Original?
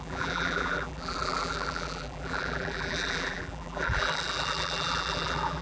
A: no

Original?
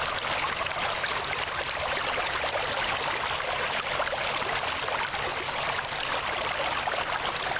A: yes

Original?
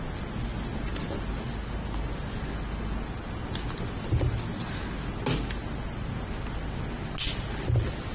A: yes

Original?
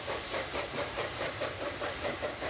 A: no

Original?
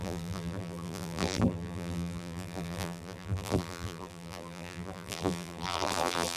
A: no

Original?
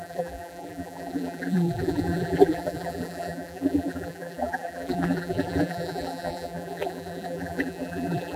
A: no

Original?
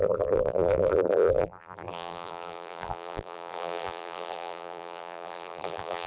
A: no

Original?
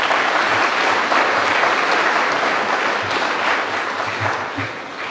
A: yes